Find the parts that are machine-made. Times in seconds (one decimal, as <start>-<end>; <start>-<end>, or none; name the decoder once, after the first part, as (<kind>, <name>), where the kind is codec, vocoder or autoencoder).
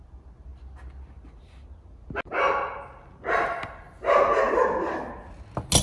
none